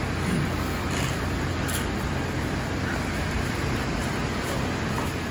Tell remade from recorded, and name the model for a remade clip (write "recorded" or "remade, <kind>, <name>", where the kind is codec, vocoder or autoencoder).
recorded